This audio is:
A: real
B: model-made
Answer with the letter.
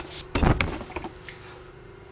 A